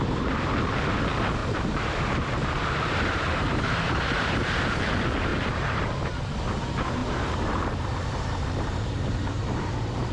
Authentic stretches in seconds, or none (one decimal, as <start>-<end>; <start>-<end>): 0.0-1.4; 4.8-5.3; 5.8-7.0